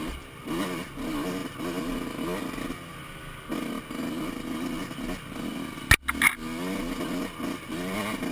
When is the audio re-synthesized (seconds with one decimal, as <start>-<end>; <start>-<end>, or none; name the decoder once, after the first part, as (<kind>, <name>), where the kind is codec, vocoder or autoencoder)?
none